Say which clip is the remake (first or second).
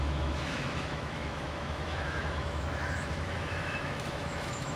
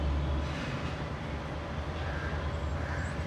first